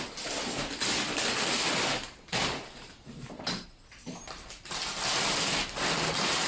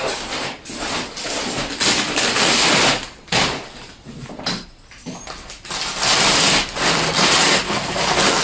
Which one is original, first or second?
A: second